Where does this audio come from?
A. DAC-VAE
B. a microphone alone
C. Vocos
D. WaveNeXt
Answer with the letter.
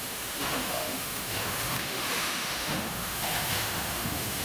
A